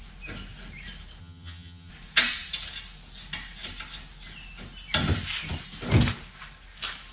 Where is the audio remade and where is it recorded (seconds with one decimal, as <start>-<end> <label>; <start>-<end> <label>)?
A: 0.0-1.2 recorded; 1.2-1.9 remade; 1.9-7.1 recorded